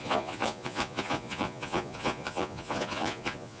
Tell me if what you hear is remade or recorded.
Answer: remade